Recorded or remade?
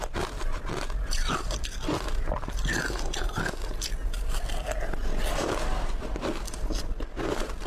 recorded